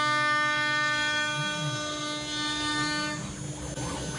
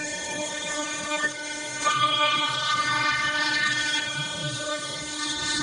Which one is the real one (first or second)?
first